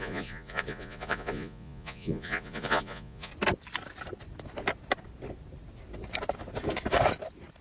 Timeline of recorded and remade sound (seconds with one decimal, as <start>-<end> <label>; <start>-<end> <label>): 0.0-3.3 remade; 3.3-7.6 recorded

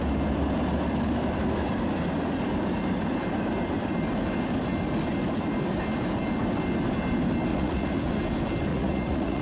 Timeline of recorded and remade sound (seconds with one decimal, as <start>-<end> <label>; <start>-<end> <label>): 0.0-7.5 recorded; 7.5-8.2 remade; 8.2-8.7 recorded; 8.7-9.4 remade

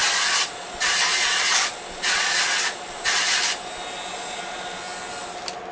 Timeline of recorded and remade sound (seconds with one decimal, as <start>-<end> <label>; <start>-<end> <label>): 0.0-3.4 remade; 3.4-4.1 recorded; 4.1-4.8 remade; 4.8-5.7 recorded

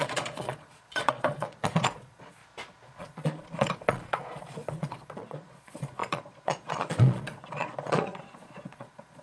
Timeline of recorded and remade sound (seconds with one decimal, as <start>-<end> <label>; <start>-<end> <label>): 0.0-2.4 remade; 2.4-3.0 recorded; 3.0-9.2 remade

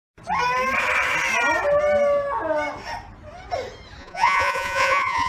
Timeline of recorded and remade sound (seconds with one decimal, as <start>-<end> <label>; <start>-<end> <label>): 0.0-4.0 recorded; 4.0-5.3 remade